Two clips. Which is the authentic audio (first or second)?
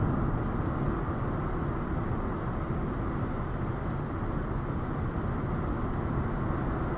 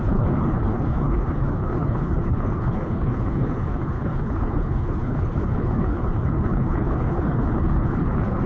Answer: first